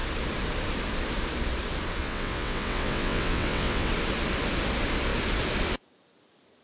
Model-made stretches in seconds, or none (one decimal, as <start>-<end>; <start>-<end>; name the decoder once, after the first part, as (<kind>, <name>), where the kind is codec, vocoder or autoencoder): 2.0-3.9 (vocoder, WaveNeXt)